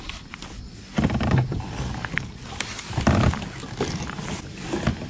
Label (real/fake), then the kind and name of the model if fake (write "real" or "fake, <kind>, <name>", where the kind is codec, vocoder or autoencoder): real